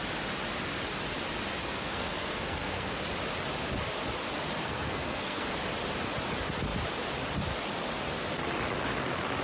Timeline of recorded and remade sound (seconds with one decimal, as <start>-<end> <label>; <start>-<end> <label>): 0.0-1.6 recorded; 1.6-3.0 remade; 3.0-4.6 recorded; 4.6-5.5 remade; 5.5-9.4 recorded